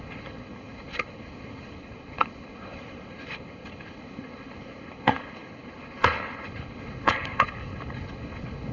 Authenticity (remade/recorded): remade